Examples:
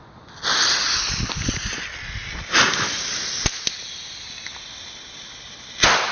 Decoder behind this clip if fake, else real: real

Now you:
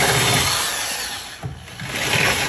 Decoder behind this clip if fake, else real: real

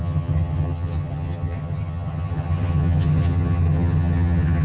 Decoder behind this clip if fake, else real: fake, vocoder, HiFi-GAN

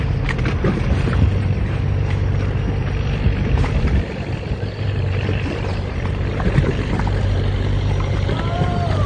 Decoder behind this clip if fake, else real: fake, vocoder, BigVGAN v2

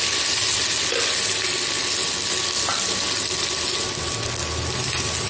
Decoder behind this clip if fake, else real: real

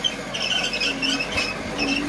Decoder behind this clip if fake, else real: real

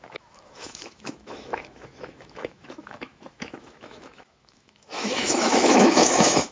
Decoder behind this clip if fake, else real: fake, autoencoder, DAC-VAE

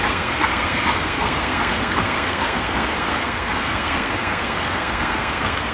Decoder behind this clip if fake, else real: fake, codec, SNAC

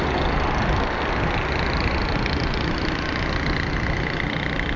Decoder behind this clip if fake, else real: real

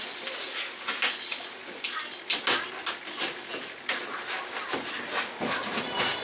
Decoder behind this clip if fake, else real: real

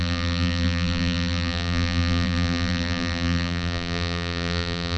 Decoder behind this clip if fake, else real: fake, vocoder, BigVGAN v2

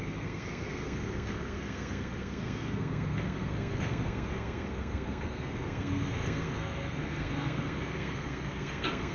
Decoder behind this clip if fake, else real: fake, codec, SNAC